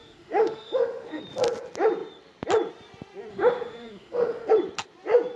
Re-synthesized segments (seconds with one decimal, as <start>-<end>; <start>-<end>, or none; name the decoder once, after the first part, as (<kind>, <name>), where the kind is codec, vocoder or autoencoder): 0.0-1.2 (autoencoder, DAC-VAE); 3.3-4.5